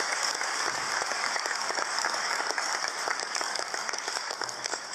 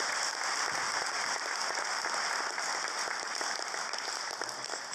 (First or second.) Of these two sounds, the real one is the second